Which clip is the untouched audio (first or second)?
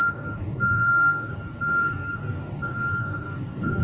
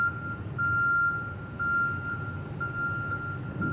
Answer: second